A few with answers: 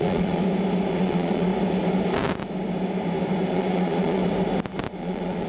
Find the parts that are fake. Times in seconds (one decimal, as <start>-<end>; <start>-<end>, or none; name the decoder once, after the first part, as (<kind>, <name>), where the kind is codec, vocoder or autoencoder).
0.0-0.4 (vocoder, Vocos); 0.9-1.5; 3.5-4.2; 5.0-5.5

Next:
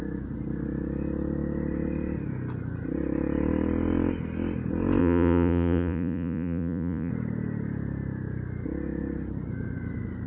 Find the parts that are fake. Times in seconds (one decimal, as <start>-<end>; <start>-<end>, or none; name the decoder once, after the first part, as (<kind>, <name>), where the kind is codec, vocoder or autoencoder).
5.0-7.1 (vocoder, Vocos)

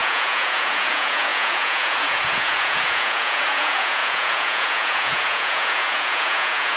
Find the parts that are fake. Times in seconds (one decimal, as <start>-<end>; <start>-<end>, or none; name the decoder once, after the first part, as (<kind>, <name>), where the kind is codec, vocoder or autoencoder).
0.0-6.8 (vocoder, Vocos)

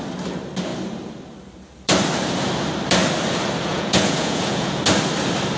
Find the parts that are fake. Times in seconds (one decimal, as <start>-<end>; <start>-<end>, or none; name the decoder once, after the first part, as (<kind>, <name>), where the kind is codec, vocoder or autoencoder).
3.7-4.8 (vocoder, Vocos)